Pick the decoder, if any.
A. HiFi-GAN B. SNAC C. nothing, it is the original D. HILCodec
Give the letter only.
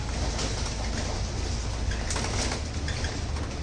C